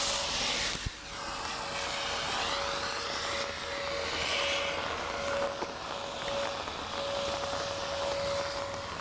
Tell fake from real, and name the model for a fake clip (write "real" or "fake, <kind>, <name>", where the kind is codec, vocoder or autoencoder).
real